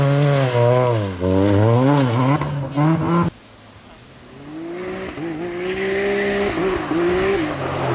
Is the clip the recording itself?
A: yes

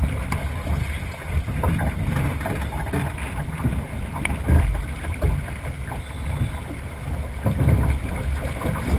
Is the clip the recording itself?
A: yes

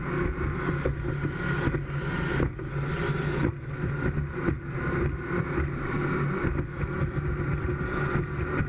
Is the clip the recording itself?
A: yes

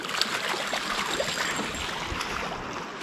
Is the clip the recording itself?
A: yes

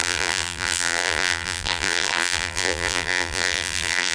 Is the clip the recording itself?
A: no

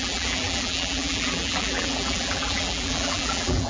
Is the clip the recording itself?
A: no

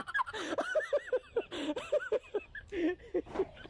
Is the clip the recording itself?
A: yes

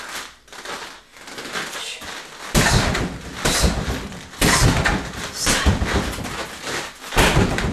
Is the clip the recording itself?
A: yes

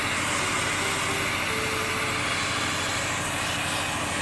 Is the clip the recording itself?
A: yes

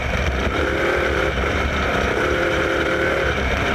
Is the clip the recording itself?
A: no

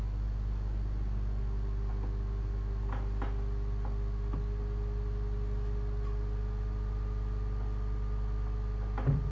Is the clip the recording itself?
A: yes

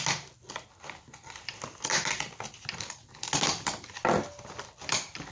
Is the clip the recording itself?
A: yes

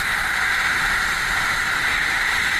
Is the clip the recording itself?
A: yes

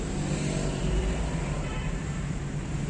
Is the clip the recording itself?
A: no